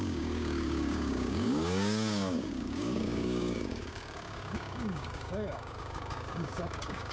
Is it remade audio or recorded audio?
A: remade